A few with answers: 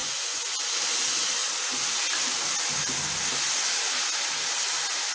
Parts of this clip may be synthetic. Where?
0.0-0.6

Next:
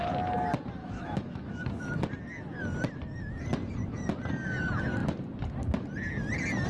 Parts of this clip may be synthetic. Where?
0.8-1.9

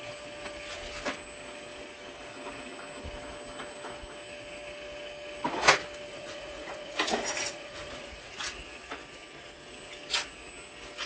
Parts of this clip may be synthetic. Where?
6.1-8.6

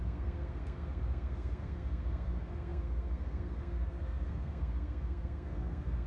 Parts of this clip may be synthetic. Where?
0.0-6.1

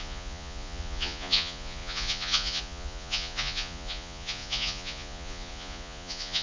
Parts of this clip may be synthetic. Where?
0.0-6.4

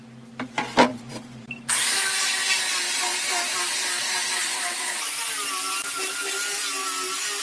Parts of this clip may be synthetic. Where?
0.9-1.7; 3.1-5.0